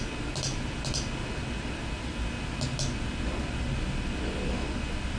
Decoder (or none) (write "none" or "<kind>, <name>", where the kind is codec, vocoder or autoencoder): none